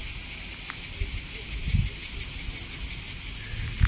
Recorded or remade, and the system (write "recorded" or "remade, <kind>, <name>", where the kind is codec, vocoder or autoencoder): recorded